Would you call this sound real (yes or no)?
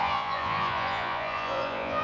no